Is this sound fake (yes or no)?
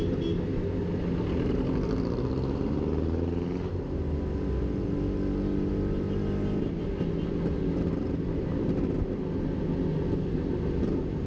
no